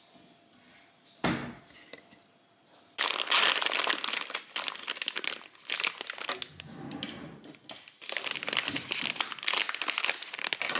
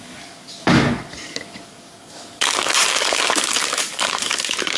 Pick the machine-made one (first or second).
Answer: second